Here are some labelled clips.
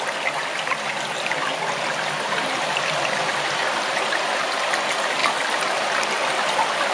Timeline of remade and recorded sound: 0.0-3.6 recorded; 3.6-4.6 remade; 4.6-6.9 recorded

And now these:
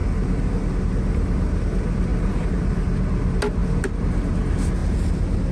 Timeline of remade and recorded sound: 0.0-2.1 recorded; 2.1-2.6 remade; 2.6-5.5 recorded